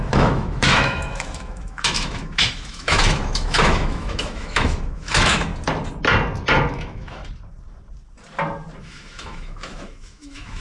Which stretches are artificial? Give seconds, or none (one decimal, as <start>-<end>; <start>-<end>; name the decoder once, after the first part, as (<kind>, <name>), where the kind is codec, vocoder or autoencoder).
0.0-5.5 (autoencoder, DAC-VAE); 6.7-7.2; 8.8-10.6